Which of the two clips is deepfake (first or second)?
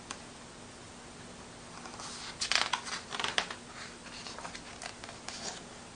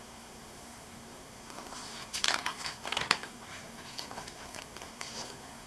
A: second